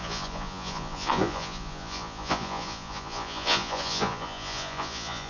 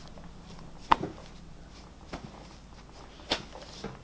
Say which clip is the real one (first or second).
second